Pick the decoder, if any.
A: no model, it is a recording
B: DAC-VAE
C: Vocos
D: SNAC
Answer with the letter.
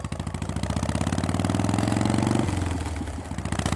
A